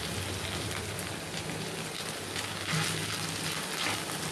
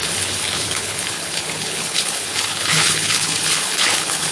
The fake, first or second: second